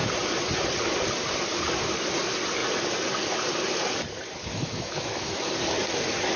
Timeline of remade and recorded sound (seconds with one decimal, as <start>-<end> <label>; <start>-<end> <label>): 0.0-4.5 recorded; 4.5-5.4 remade; 5.4-6.4 recorded